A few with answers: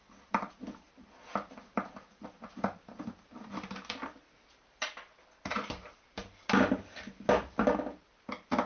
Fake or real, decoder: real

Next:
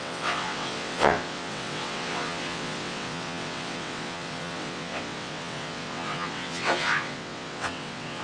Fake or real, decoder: fake, vocoder, WaveNeXt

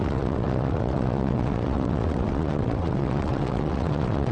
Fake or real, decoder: fake, vocoder, WaveNeXt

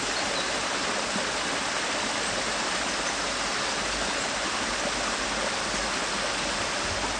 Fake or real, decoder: real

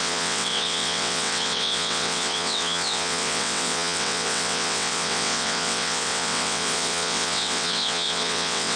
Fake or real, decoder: fake, vocoder, WaveNeXt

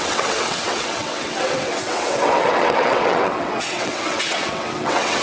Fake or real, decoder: fake, vocoder, WaveNeXt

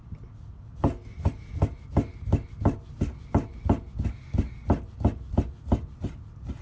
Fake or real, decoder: real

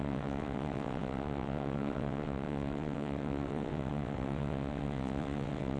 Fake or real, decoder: fake, vocoder, WaveNeXt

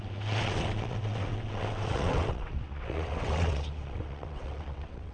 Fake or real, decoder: fake, vocoder, WaveNeXt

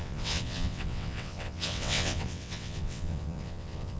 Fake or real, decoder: fake, vocoder, WaveNeXt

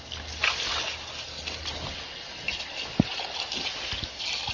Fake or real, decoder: real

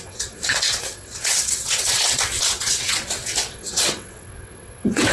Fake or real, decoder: fake, vocoder, WaveNeXt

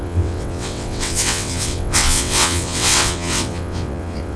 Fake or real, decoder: fake, vocoder, WaveNeXt